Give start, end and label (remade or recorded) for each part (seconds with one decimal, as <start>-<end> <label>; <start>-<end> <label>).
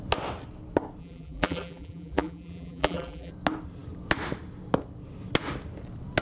0.0-1.0 recorded; 1.0-3.3 remade; 3.3-6.2 recorded